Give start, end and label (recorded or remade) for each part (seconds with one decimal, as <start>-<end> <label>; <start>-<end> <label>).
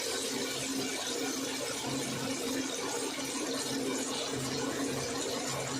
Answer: 0.0-3.9 recorded; 3.9-5.0 remade; 5.0-5.8 recorded